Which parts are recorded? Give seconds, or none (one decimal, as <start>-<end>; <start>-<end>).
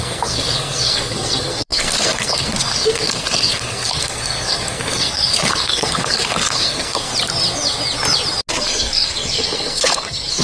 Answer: 7.1-8.5